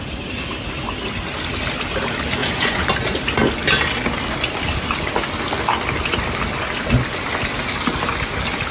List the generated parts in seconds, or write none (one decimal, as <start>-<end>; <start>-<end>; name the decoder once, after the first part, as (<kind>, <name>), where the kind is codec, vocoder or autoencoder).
2.4-2.9 (vocoder, Vocos)